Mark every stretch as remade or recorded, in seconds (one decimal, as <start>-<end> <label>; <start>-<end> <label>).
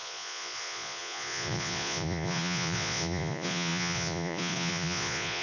0.0-5.4 remade